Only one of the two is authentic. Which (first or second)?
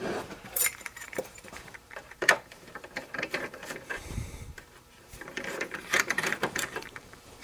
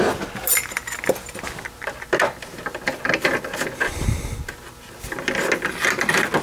second